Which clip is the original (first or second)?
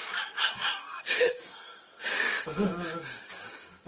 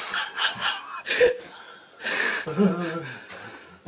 second